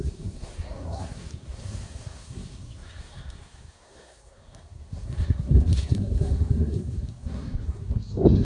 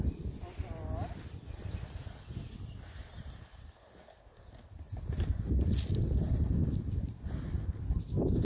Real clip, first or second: second